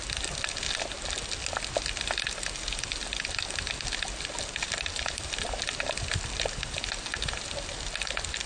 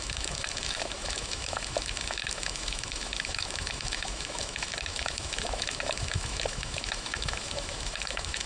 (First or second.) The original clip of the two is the first